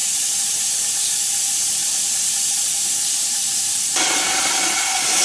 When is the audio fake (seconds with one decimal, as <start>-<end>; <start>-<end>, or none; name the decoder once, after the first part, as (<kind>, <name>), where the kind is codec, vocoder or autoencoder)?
0.0-0.7 (vocoder, BigVGAN v2); 1.8-4.6